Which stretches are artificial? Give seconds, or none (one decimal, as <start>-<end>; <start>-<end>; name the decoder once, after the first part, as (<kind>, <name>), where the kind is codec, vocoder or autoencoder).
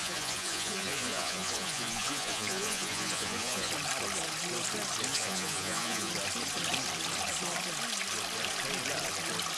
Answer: 0.0-3.7 (vocoder, Vocos); 5.1-6.1